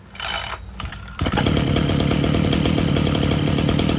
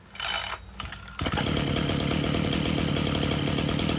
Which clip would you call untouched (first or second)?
second